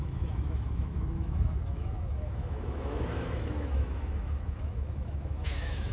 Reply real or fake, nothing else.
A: fake